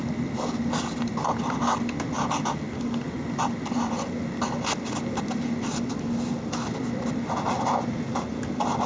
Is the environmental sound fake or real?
real